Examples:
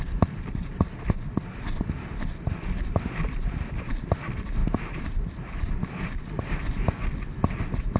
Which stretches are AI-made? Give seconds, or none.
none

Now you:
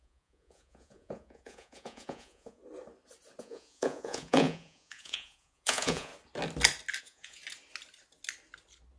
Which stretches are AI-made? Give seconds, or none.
0.0-2.6 (vocoder, Vocos); 3.4-6.1; 7.0-7.4

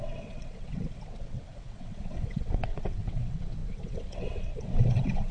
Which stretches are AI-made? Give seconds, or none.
0.0-5.3 (vocoder, WaveNeXt)

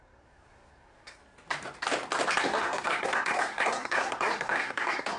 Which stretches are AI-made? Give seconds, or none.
0.0-1.2 (codec, SNAC); 2.4-5.2

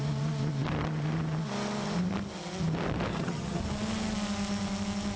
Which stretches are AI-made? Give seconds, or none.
3.1-3.6 (vocoder, HiFi-GAN)

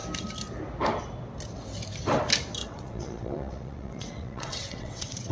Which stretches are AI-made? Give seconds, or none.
2.6-5.3 (vocoder, WaveNeXt)

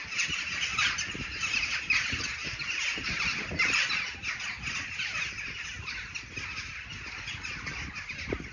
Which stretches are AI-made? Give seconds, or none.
none

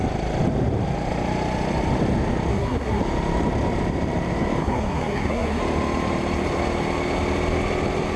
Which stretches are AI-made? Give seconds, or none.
2.5-3.0 (codec, SNAC); 4.6-5.6